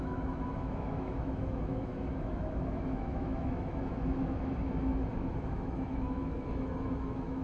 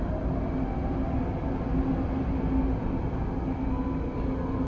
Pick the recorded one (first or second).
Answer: second